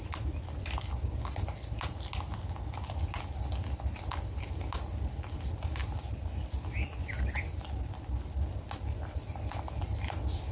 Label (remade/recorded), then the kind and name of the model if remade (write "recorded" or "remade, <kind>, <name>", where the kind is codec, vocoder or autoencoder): recorded